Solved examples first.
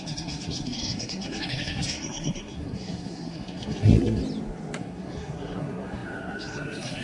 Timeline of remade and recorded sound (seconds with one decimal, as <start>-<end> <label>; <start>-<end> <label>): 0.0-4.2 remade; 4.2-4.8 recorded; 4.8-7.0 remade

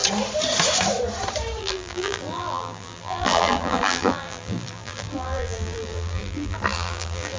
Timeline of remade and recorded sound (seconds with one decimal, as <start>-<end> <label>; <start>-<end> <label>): 0.0-1.6 recorded; 1.6-7.4 remade

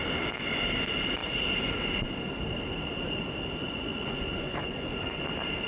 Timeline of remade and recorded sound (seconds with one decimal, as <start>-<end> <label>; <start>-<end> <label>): 0.0-3.6 recorded; 3.6-4.9 remade; 4.9-5.7 recorded

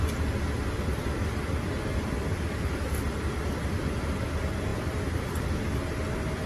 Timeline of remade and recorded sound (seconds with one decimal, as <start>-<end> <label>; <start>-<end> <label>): 0.0-6.5 recorded

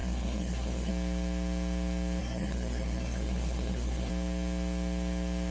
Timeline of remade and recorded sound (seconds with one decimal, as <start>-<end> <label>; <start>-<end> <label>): 0.0-0.9 remade; 0.9-2.2 recorded; 2.2-4.1 remade; 4.1-5.5 recorded

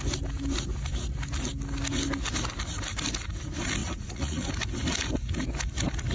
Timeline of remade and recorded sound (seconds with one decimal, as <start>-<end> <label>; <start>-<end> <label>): 0.0-3.8 recorded; 3.8-4.5 remade; 4.5-6.1 recorded

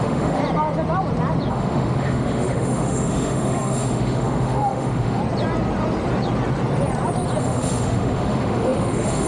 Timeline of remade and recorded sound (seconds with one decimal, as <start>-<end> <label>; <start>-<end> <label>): 0.0-0.4 remade; 0.4-1.5 recorded; 1.5-5.2 remade; 5.2-7.4 recorded; 7.4-9.3 remade